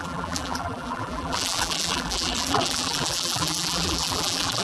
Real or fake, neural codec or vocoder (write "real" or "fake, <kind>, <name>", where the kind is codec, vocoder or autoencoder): fake, vocoder, BigVGAN v2